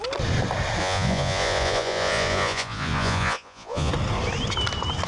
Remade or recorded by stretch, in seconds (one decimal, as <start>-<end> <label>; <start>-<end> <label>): 0.0-0.8 recorded; 0.8-3.9 remade; 3.9-5.1 recorded